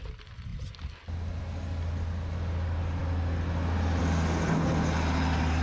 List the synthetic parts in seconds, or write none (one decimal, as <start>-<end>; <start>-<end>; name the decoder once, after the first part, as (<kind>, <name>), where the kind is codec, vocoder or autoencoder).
none